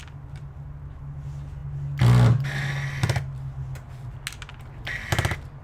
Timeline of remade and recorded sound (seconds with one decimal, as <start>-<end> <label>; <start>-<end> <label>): 0.0-5.6 recorded

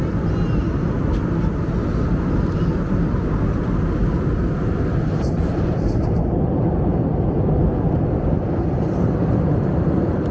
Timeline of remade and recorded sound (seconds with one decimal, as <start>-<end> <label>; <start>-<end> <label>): 0.0-4.0 recorded; 4.0-6.3 remade; 6.3-6.9 recorded; 6.9-10.3 remade

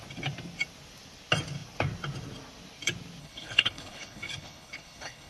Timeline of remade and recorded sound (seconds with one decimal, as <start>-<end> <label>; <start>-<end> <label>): 0.0-3.2 recorded; 3.2-5.3 remade

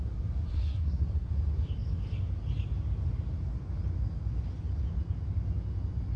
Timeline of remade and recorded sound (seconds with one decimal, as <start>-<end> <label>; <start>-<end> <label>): 0.0-0.5 recorded; 0.5-1.3 remade; 1.3-6.2 recorded